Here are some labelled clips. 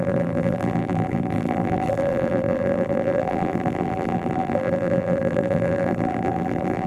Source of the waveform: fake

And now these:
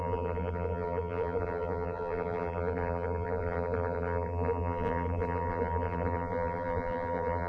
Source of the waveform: fake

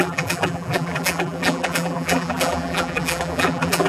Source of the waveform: fake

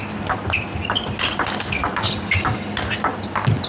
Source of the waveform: real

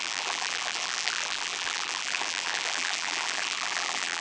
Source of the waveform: fake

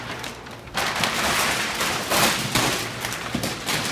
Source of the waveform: fake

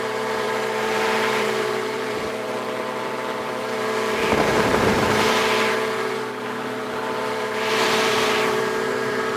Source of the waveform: fake